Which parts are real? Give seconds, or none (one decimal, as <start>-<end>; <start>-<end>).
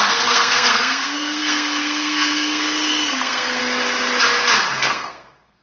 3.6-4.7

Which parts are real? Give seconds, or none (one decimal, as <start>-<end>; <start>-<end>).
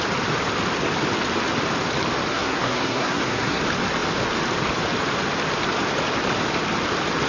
0.0-2.3; 3.6-7.3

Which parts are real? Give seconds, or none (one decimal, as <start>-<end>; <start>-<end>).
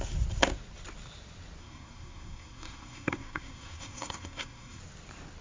0.0-1.6; 4.8-5.4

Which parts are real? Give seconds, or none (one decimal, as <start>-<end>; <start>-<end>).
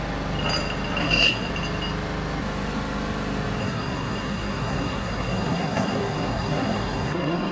0.0-1.0; 1.5-3.6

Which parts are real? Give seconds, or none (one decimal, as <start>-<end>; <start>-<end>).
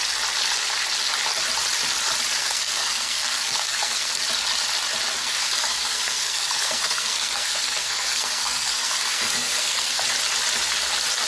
0.0-2.4; 4.2-5.2; 10.0-11.3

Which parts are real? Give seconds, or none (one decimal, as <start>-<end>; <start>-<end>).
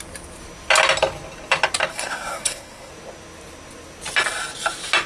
0.0-1.9; 2.9-5.1